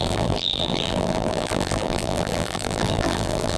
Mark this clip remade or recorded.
remade